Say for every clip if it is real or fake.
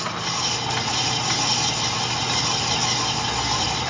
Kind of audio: real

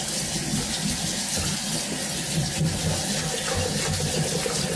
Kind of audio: real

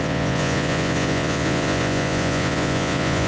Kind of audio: fake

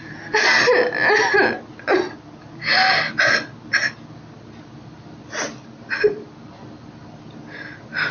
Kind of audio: real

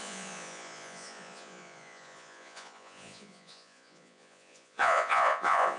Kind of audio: fake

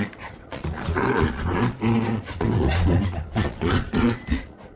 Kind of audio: fake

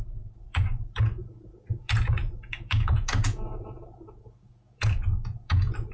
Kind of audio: fake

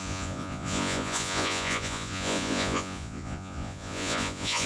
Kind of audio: fake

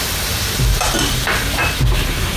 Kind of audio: real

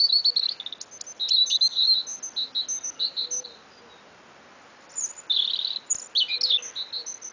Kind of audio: real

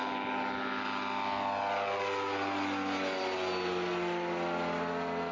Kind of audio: real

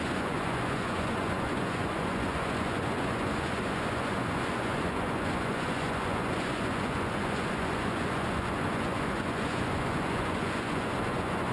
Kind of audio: fake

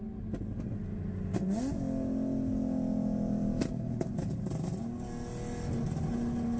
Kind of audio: real